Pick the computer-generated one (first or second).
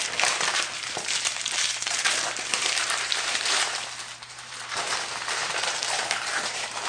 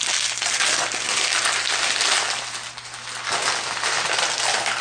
first